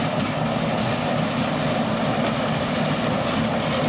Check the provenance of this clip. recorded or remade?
recorded